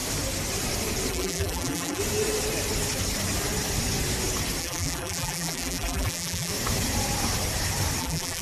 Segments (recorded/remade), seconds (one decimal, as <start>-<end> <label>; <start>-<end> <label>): 0.0-1.1 recorded; 1.1-2.0 remade; 2.0-4.6 recorded; 4.6-6.5 remade; 6.5-8.0 recorded; 8.0-8.4 remade